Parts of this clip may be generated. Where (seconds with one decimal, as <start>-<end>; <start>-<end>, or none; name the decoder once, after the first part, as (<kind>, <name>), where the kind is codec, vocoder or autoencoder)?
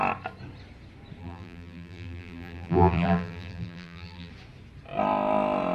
1.2-4.3 (vocoder, BigVGAN v2)